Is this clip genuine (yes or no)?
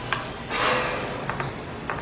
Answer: yes